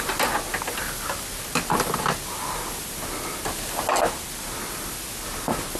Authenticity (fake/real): real